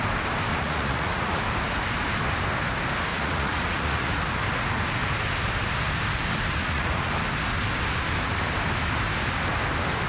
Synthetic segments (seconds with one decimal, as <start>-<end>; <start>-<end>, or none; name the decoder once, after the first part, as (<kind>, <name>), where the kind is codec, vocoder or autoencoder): 0.5-1.4 (vocoder, Vocos); 3.1-4.1; 6.6-7.1